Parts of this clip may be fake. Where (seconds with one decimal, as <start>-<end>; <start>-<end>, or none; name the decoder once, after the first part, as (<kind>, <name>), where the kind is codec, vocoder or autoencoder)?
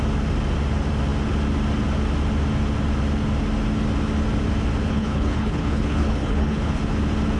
4.9-6.8 (codec, HILCodec)